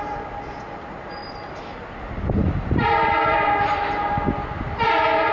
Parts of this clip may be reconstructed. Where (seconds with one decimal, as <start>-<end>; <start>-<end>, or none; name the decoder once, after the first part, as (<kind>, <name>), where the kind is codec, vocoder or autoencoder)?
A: 1.2-1.7 (vocoder, BigVGAN v2); 2.4-3.8